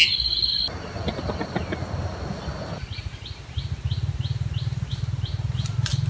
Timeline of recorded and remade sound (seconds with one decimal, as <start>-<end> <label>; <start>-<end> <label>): 0.0-6.1 recorded